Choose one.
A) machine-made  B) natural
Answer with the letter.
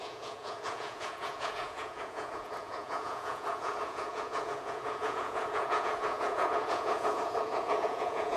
A